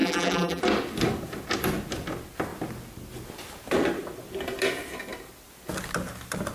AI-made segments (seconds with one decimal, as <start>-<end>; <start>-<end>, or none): 0.0-0.6